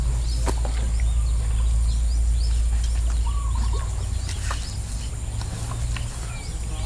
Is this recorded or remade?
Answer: recorded